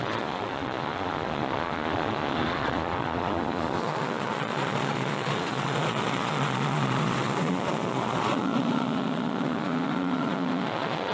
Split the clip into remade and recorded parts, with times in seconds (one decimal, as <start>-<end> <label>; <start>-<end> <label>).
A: 0.0-11.1 remade